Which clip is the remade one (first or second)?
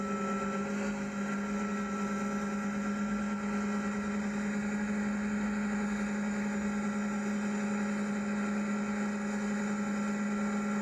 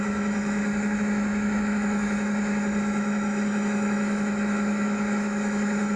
second